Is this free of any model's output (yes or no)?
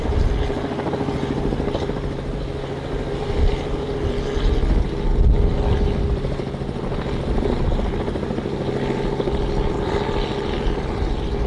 yes